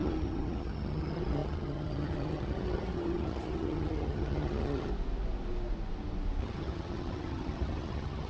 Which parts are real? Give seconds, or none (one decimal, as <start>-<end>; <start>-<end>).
4.9-6.4